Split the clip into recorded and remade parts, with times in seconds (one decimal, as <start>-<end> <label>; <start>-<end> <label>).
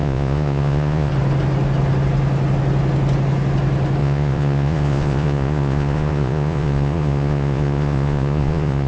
0.0-1.1 remade; 1.1-4.0 recorded; 4.0-8.9 remade